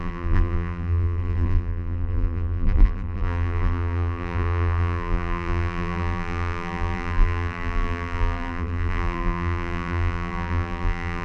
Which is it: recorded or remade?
remade